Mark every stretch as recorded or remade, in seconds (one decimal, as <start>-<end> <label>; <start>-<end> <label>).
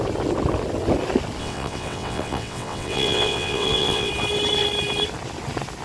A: 0.0-1.4 recorded; 1.4-4.1 remade; 4.1-5.8 recorded